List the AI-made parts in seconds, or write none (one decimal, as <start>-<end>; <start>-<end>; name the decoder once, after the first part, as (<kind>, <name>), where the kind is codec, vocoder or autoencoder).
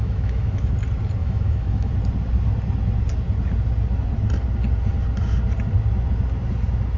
0.0-0.7 (autoencoder, DAC-VAE); 1.2-1.9